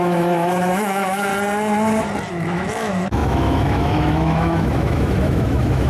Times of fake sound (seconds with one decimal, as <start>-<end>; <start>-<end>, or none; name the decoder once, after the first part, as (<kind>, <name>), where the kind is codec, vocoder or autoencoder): 0.0-1.3 (autoencoder, DAC-VAE); 2.3-5.9